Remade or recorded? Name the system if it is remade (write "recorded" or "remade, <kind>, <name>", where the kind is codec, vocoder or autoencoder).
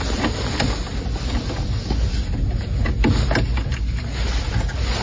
recorded